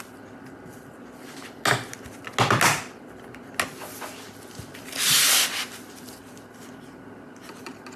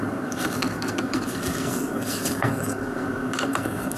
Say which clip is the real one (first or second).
first